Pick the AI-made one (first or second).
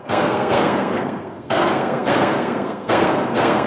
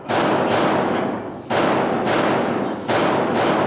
first